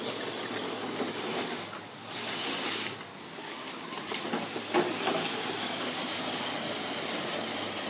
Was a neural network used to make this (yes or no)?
no